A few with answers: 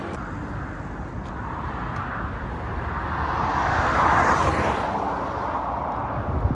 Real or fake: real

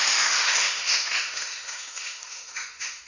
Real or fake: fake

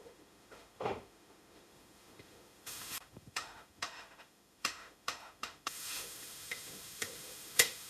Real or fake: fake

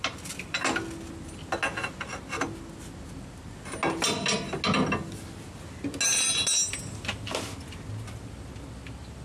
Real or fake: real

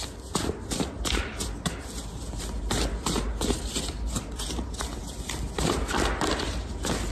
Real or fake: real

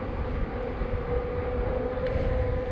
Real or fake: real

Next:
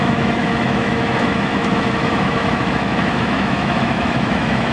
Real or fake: fake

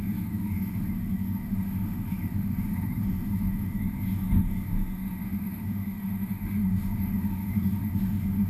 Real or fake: fake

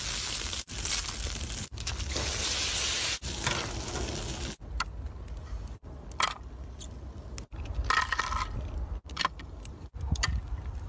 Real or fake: real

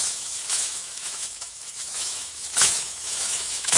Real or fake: fake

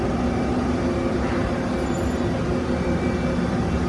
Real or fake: real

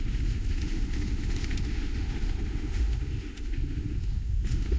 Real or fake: fake